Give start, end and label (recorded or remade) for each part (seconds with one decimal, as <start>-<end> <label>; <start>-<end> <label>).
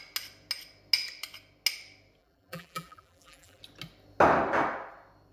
0.0-2.2 recorded; 2.2-3.6 remade; 3.6-5.3 recorded